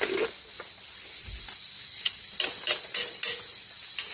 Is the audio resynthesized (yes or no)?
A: no